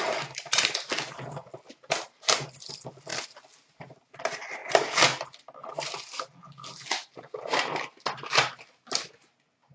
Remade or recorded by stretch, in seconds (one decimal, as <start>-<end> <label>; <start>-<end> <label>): 0.0-9.7 recorded